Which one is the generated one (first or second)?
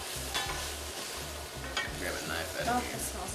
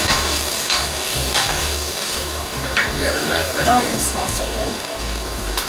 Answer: second